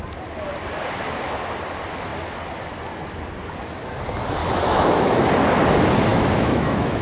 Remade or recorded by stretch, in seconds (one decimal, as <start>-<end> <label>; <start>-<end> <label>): 0.0-4.4 recorded; 4.4-5.2 remade; 5.2-6.1 recorded; 6.1-7.0 remade